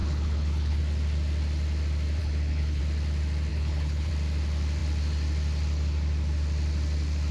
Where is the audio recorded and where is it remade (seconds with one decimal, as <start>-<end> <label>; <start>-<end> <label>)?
0.0-0.8 remade; 0.8-2.2 recorded; 2.2-2.8 remade; 2.8-3.5 recorded; 3.5-4.1 remade; 4.1-7.3 recorded